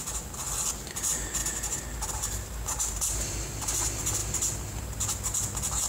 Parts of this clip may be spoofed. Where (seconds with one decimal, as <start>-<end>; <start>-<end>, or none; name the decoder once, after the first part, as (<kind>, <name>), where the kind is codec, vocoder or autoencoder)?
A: none